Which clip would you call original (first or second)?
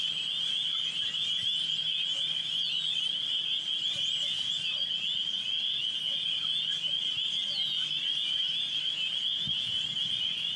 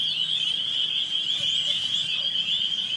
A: first